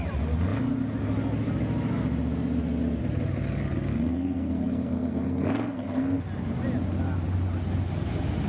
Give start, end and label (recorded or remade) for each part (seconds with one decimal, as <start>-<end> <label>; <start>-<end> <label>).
0.0-3.9 recorded; 3.9-6.2 remade; 6.2-8.5 recorded